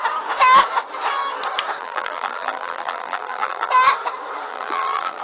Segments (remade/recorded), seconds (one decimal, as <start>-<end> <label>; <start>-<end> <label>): 0.0-1.8 recorded; 1.8-3.7 remade; 3.7-4.5 recorded; 4.5-5.2 remade